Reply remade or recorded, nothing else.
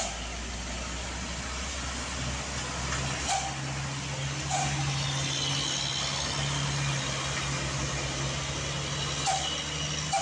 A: recorded